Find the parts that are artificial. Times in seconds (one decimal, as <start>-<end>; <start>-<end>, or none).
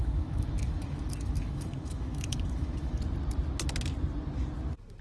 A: 0.0-3.0